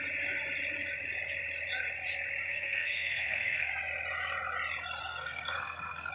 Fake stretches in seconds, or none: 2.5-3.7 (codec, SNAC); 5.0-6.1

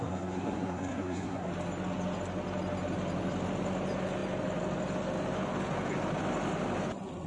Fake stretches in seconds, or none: 0.0-1.5 (codec, SNAC)

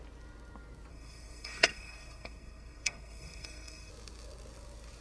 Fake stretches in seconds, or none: 0.9-3.9 (codec, SNAC)